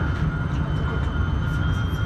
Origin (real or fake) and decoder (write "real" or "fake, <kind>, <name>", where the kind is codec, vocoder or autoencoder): real